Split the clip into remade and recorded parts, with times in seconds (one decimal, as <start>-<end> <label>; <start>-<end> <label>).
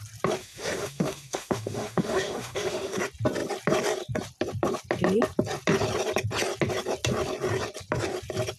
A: 0.0-0.4 recorded; 0.4-3.0 remade; 3.0-8.6 recorded